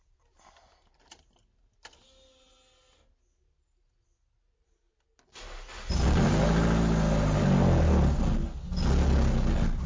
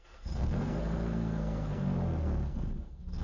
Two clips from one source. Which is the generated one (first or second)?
second